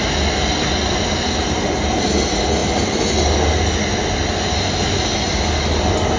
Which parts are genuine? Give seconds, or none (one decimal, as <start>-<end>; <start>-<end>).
0.0-6.2